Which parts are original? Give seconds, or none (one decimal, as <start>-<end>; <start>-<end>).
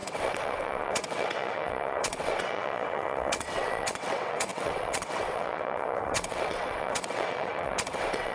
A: none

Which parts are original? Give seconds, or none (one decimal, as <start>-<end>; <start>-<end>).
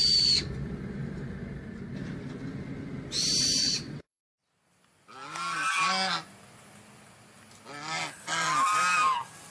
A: 0.0-3.6; 4.2-9.5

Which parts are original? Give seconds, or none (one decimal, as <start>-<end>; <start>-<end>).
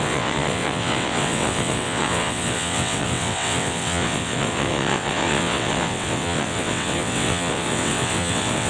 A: none